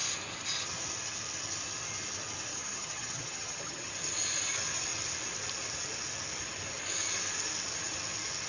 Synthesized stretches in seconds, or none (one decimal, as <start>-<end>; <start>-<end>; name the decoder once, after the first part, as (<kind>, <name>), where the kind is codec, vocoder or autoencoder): 2.5-3.9 (vocoder, HiFi-GAN)